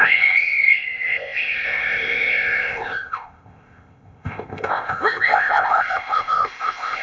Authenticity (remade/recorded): remade